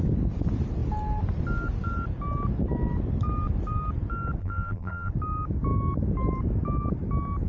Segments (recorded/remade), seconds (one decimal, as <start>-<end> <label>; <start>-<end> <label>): 0.0-4.4 recorded; 4.4-5.1 remade; 5.1-7.5 recorded